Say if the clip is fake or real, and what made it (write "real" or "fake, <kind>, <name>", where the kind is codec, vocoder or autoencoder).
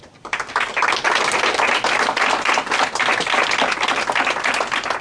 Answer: real